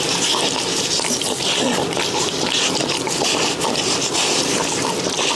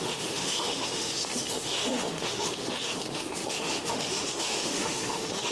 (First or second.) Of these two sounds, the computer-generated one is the second